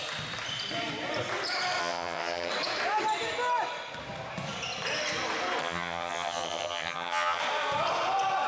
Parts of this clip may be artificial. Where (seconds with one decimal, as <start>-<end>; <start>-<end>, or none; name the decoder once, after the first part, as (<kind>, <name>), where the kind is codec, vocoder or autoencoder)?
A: 1.8-2.5 (vocoder, HiFi-GAN); 5.6-7.4